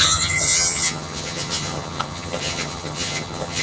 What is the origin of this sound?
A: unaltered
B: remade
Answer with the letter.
B